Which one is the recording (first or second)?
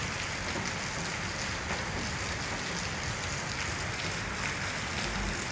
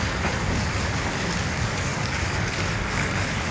first